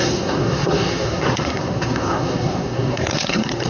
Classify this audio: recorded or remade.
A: remade